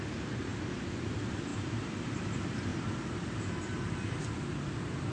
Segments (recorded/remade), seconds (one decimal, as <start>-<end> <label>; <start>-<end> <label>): 0.0-2.7 remade; 2.7-5.1 recorded